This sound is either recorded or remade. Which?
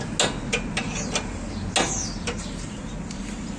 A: recorded